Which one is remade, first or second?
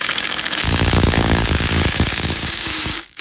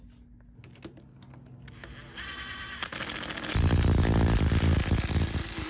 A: first